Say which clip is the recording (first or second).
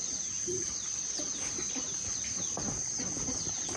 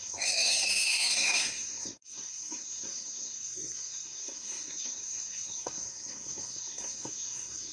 first